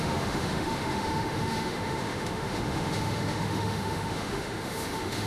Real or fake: fake